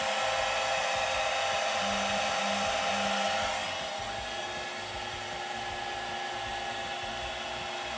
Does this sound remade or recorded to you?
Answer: recorded